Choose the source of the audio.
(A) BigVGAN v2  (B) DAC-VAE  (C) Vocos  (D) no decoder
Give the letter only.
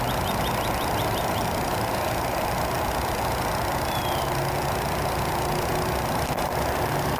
D